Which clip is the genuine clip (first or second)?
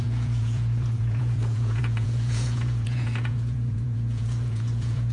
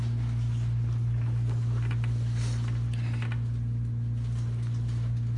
second